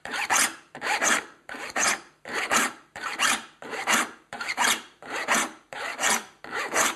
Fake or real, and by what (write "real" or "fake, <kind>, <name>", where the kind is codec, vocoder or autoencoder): fake, vocoder, BigVGAN v2